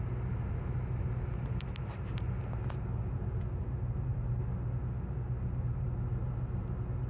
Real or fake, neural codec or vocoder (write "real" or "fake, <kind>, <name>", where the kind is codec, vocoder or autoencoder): real